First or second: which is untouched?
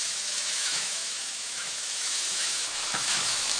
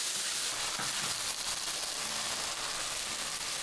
second